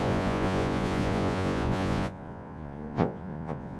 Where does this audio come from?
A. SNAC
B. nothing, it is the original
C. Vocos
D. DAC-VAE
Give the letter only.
C